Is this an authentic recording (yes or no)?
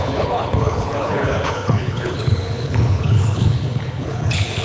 no